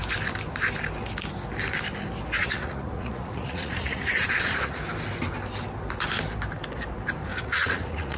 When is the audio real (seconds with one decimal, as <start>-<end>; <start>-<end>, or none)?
0.0-2.4; 4.8-7.3